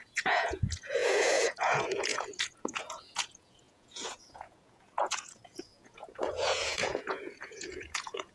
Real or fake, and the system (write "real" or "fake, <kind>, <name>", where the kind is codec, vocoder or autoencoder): fake, vocoder, Vocos